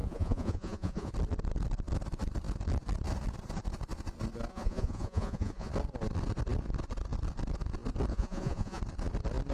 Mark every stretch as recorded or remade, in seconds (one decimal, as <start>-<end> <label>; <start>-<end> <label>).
0.0-1.1 remade; 1.1-4.5 recorded; 4.5-5.7 remade; 5.7-8.1 recorded; 8.1-8.8 remade; 8.8-9.5 recorded